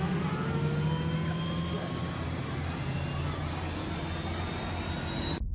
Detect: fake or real real